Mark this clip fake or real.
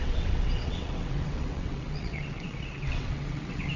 fake